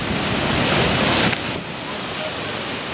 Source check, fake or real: real